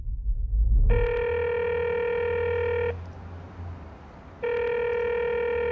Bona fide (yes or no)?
yes